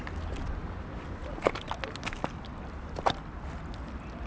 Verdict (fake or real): real